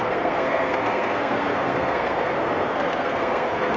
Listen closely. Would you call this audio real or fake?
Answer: fake